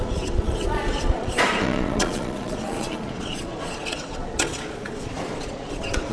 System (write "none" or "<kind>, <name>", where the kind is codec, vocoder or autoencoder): vocoder, Vocos